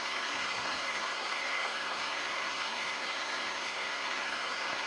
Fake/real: fake